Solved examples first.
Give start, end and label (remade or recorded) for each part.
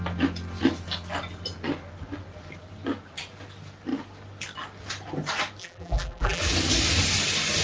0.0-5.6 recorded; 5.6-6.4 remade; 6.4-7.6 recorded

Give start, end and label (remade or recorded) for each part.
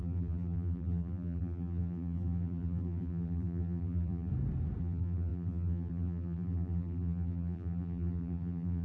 0.0-4.3 remade; 4.3-4.8 recorded; 4.8-8.8 remade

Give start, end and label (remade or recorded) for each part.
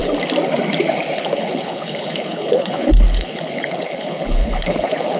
0.0-1.1 recorded; 1.1-5.2 remade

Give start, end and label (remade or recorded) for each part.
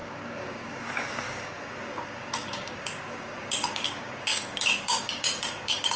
0.0-6.0 remade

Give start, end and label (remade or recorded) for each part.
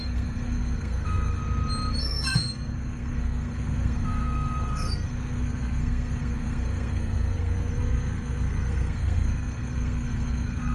0.0-1.4 remade; 1.4-2.0 recorded; 2.0-10.7 remade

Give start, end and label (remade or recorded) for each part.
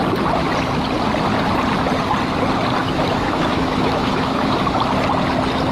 0.0-2.8 recorded; 2.8-4.6 remade; 4.6-5.7 recorded